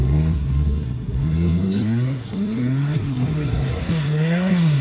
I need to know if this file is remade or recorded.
remade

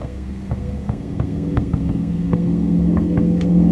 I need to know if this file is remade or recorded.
remade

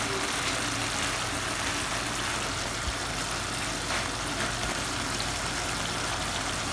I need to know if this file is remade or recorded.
recorded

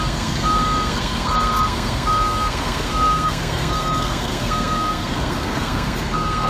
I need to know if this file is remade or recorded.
remade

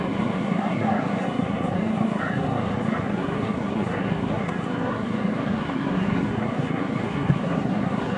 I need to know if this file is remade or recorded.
remade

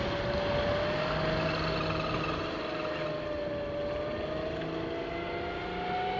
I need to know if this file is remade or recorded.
recorded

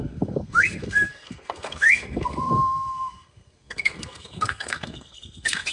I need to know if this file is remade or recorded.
remade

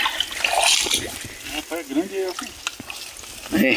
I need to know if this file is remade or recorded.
recorded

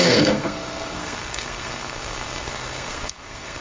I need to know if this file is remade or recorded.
remade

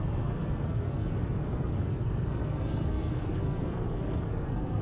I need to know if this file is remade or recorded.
remade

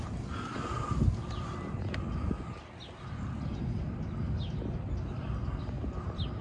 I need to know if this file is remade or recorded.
recorded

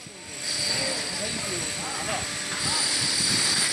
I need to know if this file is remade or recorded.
recorded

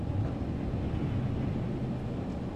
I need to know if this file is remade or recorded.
recorded